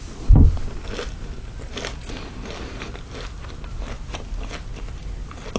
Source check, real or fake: real